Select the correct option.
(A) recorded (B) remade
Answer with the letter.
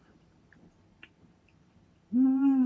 B